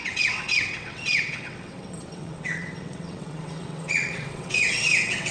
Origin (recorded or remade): remade